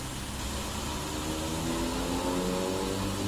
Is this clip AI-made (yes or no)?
no